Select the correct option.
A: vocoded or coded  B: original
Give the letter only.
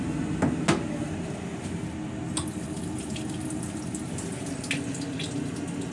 B